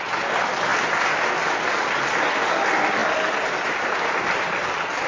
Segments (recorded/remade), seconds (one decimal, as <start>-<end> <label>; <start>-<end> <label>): 0.0-5.1 recorded